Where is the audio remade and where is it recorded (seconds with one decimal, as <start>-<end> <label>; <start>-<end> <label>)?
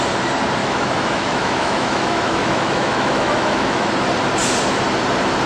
0.0-0.6 recorded; 0.6-3.9 remade; 3.9-5.5 recorded